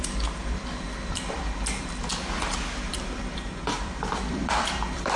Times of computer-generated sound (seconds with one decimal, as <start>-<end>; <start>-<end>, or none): 0.4-1.4; 2.9-5.2